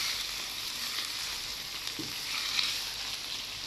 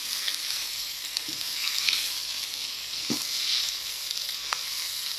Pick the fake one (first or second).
second